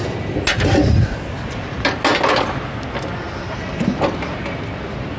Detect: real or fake real